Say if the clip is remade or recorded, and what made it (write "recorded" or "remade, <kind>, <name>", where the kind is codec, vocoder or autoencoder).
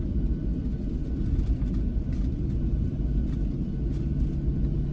recorded